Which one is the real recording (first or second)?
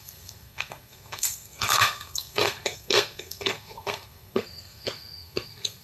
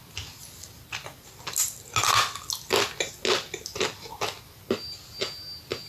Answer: second